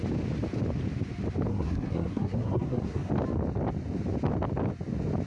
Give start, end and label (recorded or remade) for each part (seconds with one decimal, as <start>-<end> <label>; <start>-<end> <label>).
0.0-1.5 recorded; 1.5-3.1 remade; 3.1-5.3 recorded